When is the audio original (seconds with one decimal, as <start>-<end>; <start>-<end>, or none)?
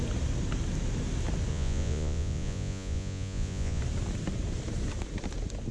0.0-1.5; 3.8-5.7